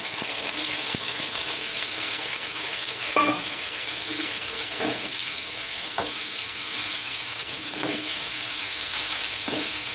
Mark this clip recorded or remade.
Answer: remade